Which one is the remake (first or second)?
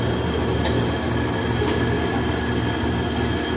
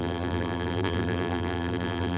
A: second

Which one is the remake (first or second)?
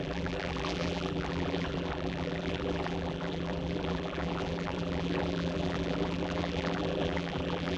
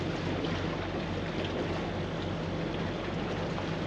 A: first